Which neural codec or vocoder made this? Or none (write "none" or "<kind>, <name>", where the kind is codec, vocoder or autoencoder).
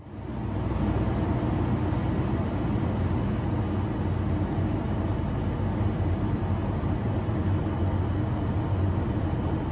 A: none